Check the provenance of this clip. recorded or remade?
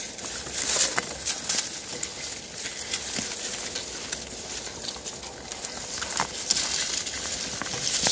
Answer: recorded